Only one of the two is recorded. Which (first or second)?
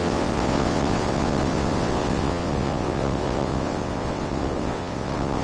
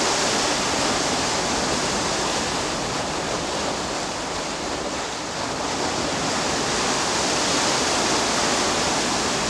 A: second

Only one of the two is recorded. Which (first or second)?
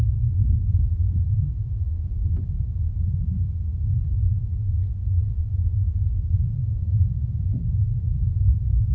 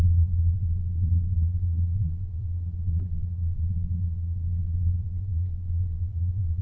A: first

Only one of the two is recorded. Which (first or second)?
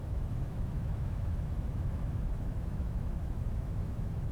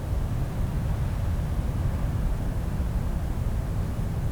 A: second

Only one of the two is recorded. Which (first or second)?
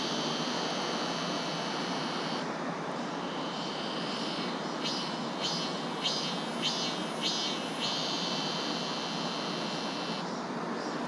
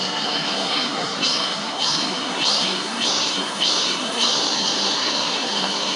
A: first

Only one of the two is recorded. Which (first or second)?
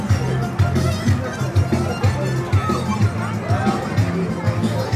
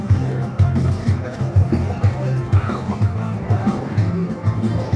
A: first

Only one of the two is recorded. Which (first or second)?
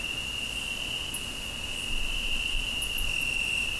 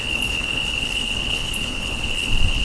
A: first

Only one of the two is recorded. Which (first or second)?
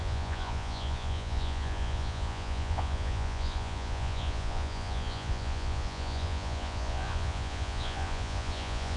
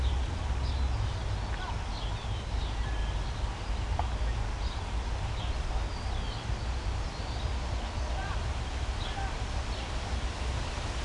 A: second